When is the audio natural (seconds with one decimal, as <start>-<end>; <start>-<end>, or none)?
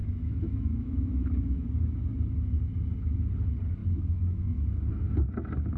1.7-3.8; 4.5-5.8